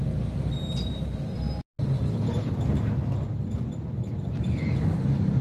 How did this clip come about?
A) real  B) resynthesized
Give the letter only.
A